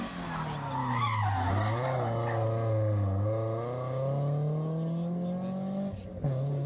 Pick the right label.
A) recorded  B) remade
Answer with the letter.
A